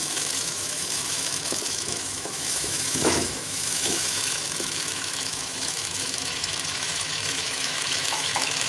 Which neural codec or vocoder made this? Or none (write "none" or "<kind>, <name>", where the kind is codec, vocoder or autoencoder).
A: autoencoder, DAC-VAE